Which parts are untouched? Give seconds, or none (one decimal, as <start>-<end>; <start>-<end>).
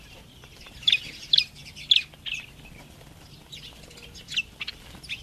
0.0-5.2